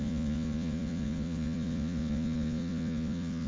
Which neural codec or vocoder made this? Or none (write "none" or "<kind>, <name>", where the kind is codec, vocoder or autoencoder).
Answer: vocoder, Vocos